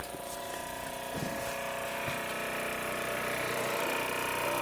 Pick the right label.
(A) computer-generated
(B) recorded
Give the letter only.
B